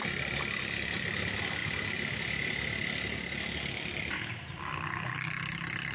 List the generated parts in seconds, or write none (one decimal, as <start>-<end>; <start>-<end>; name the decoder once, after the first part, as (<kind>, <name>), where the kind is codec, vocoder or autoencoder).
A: none

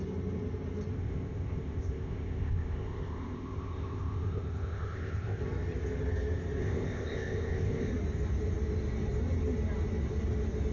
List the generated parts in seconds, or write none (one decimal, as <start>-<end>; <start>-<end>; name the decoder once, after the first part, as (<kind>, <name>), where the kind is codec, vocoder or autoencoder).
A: 0.9-5.4 (codec, ZipCodec); 6.6-7.9

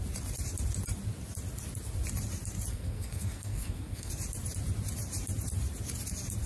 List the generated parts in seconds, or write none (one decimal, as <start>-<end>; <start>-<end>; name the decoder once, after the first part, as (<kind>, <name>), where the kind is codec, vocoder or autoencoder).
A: 2.7-4.1 (codec, SNAC)

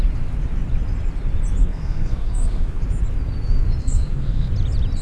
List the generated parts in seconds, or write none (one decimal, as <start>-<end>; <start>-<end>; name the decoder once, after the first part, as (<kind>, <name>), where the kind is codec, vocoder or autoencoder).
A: 1.6-2.8 (codec, SNAC); 3.8-4.5

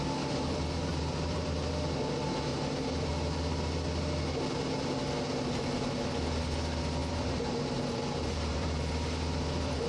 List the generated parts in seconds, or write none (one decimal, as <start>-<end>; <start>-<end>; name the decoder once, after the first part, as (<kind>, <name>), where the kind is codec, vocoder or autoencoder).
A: 0.9-1.7 (vocoder, BigVGAN v2); 2.5-3.1; 7.0-8.9

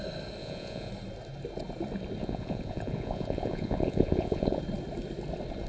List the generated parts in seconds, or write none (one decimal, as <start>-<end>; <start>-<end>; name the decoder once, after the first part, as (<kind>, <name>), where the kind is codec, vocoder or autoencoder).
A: 0.4-0.9 (vocoder, Vocos); 2.2-4.6

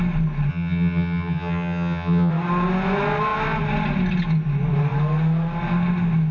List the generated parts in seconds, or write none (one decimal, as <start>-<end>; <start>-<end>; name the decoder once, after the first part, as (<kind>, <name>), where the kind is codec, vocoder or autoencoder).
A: 0.5-2.3 (vocoder, HiFi-GAN)

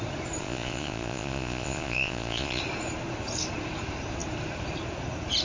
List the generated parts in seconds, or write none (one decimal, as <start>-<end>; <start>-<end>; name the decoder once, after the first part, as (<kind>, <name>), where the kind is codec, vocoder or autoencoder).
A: 0.4-2.6 (vocoder, Vocos)